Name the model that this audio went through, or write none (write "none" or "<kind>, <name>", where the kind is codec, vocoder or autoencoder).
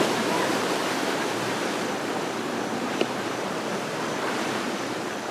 vocoder, BigVGAN v2